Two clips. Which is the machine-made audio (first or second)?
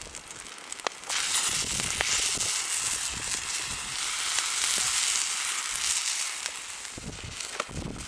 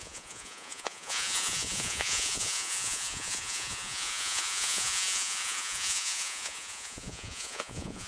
second